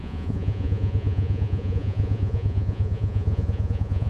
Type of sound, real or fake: fake